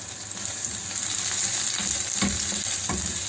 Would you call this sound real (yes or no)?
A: yes